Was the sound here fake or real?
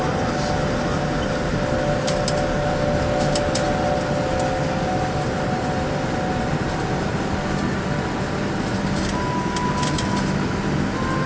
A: real